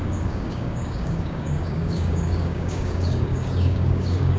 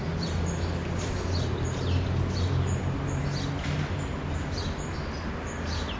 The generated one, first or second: first